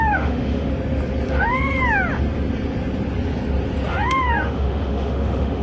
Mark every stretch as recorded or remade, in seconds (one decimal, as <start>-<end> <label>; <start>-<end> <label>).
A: 0.0-0.7 remade; 0.7-1.3 recorded; 1.3-1.8 remade; 1.8-3.9 recorded; 3.9-5.6 remade